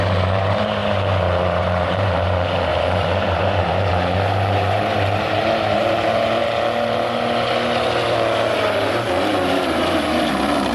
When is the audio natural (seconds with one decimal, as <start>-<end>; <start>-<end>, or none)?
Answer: 6.4-8.5